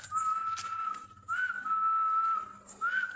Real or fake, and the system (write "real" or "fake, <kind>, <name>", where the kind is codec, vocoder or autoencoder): real